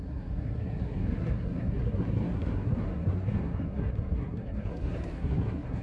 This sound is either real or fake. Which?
fake